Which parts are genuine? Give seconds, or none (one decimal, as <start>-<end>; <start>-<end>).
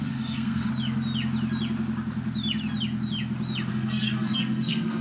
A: 0.7-3.7